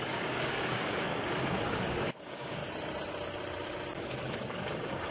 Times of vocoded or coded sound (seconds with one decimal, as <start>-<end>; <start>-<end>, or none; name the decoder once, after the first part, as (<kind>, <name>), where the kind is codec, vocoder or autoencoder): 0.0-2.6 (codec, DAC); 4.0-5.1